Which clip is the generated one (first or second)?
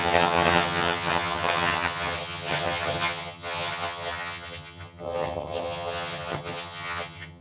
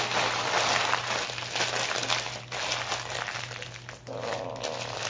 first